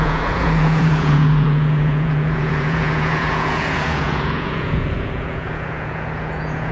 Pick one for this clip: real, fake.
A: fake